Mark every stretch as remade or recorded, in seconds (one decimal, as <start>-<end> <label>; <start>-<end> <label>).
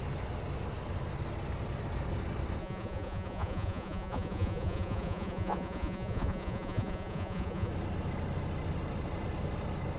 0.0-2.6 recorded; 2.6-7.7 remade; 7.7-10.0 recorded